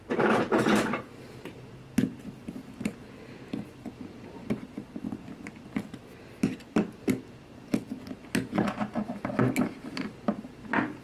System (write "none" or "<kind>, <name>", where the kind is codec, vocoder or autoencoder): none